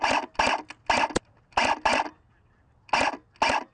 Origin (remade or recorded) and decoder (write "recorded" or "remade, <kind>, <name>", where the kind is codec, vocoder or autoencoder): recorded